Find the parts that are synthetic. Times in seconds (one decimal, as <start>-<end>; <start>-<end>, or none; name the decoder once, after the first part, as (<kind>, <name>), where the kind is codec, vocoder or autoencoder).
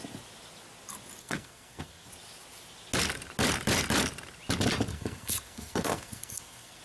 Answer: 1.2-2.1 (codec, SNAC); 4.9-6.8